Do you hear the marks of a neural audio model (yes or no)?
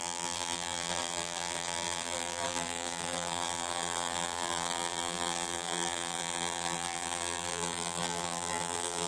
yes